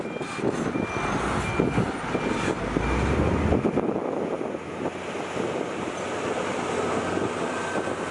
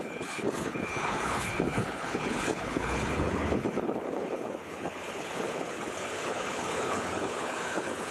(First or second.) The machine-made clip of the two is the second